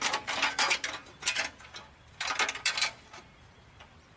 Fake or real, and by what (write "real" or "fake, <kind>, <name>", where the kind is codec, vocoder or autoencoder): real